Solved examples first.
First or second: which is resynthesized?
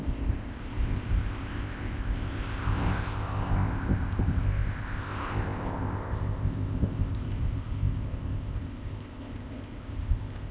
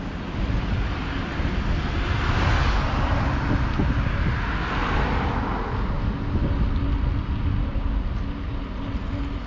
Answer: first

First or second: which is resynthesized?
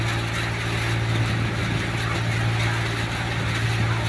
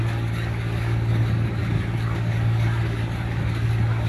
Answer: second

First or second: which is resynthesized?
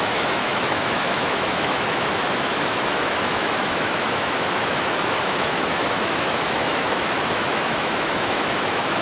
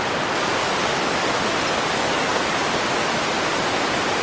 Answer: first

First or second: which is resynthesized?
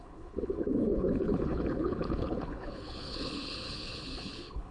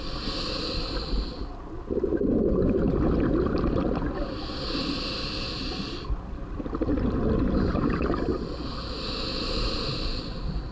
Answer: first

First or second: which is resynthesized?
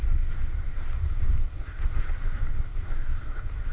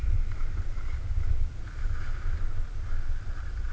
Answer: first